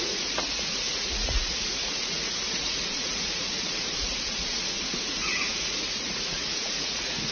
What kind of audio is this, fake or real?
fake